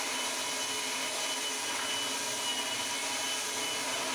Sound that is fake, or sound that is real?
real